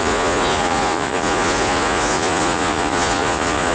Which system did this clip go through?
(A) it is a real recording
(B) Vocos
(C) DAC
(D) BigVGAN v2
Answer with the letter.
B